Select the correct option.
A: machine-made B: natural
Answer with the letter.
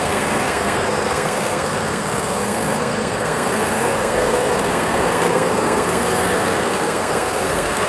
A